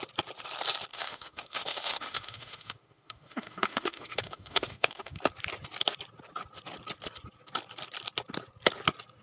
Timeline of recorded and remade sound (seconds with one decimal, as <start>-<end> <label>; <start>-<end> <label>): 0.0-0.9 recorded; 0.9-5.2 remade; 5.2-9.2 recorded